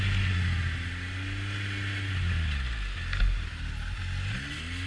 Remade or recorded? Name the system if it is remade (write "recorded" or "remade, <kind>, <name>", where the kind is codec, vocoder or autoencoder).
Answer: recorded